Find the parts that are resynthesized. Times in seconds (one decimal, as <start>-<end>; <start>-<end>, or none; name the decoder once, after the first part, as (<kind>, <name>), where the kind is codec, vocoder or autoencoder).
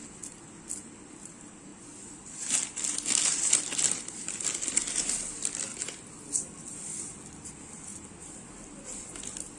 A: none